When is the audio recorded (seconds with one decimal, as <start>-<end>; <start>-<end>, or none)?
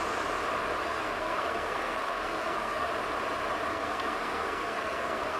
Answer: 0.0-0.8; 2.9-3.7